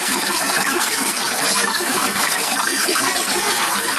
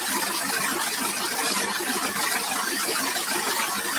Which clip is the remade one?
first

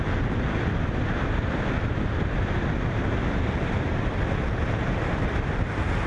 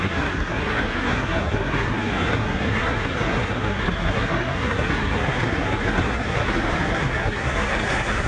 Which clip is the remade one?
second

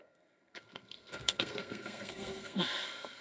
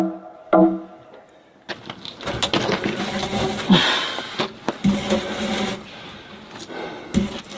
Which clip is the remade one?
first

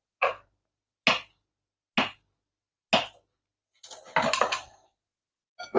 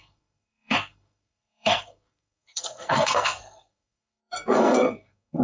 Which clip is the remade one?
second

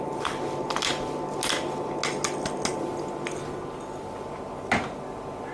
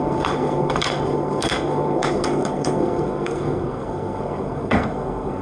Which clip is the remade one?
second